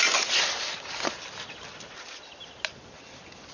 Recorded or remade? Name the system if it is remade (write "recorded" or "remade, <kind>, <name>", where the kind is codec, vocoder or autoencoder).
recorded